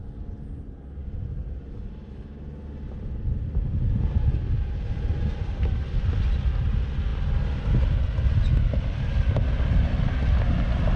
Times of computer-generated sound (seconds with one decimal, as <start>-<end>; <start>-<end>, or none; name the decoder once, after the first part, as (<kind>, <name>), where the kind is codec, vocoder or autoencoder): none